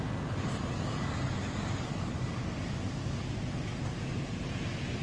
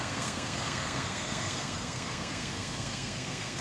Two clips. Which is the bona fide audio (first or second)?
first